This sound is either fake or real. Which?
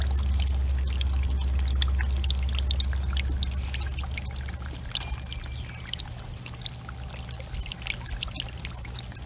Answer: real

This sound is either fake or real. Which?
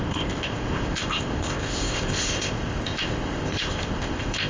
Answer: fake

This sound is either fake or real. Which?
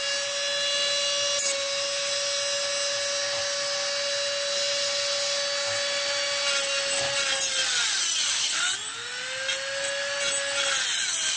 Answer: real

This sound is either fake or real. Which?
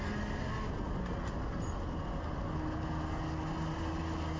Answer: real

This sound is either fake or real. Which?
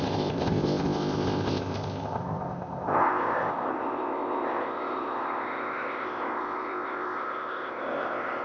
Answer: fake